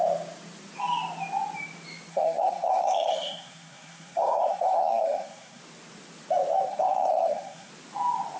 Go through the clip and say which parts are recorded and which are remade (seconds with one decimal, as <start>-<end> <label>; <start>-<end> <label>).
0.0-2.1 recorded; 2.1-5.6 remade; 5.6-6.7 recorded; 6.7-7.7 remade; 7.7-8.4 recorded